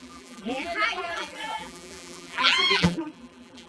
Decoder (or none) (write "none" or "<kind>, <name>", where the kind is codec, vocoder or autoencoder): vocoder, BigVGAN v2